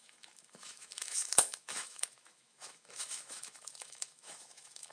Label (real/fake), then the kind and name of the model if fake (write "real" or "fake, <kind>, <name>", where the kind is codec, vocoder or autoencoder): fake, autoencoder, DAC-VAE